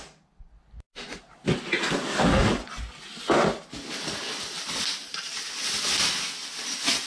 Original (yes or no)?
yes